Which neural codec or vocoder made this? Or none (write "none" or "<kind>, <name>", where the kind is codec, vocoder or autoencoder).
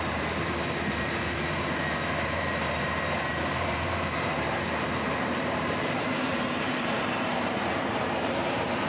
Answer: vocoder, BigVGAN v2